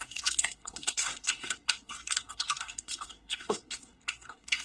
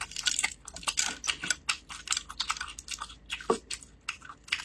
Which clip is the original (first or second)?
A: second